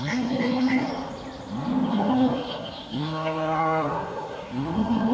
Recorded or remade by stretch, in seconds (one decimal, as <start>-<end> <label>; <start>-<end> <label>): 0.0-0.9 remade; 0.9-1.9 recorded; 1.9-5.1 remade